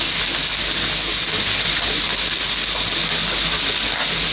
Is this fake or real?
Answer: real